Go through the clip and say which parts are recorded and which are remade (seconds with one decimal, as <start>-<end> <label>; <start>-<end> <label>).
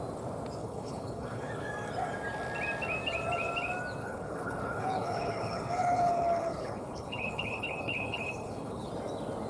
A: 0.0-0.6 recorded; 0.6-1.5 remade; 1.5-4.0 recorded; 4.0-8.9 remade; 8.9-9.5 recorded